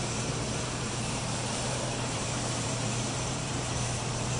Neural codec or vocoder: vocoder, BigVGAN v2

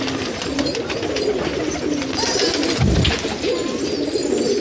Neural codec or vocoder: none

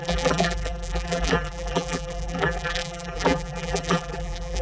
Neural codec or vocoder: vocoder, BigVGAN v2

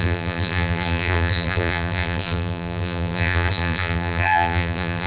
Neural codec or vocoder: vocoder, BigVGAN v2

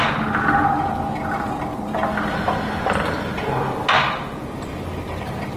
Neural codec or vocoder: none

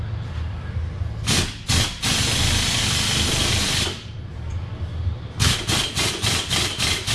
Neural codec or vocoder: vocoder, BigVGAN v2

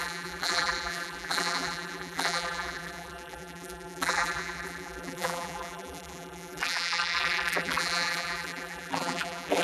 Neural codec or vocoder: vocoder, BigVGAN v2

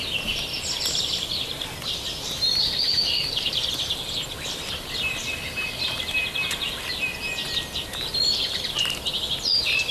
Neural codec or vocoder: none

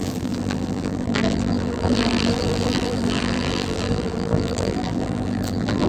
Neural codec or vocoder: vocoder, BigVGAN v2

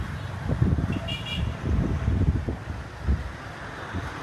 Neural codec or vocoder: none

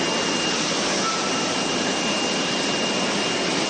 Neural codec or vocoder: none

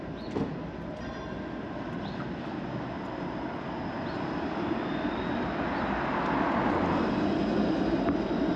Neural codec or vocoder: none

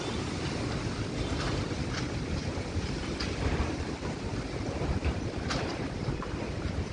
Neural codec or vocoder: vocoder, BigVGAN v2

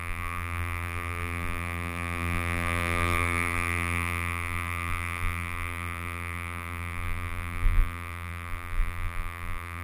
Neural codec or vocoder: vocoder, BigVGAN v2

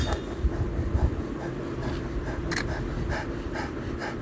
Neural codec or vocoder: none